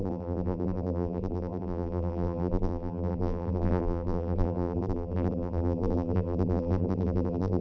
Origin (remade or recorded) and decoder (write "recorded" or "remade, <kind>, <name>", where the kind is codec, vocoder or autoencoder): remade, vocoder, BigVGAN v2